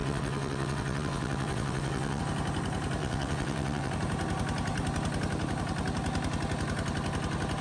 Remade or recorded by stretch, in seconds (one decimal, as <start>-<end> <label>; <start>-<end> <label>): 0.0-2.2 remade; 2.2-3.0 recorded; 3.0-3.9 remade; 3.9-7.6 recorded